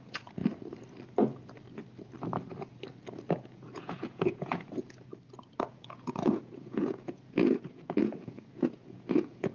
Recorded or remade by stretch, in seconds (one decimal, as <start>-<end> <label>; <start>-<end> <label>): 0.0-0.4 remade; 0.4-3.3 recorded; 3.3-5.1 remade; 5.1-5.7 recorded; 5.7-9.5 remade